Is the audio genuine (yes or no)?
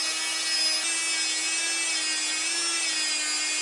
yes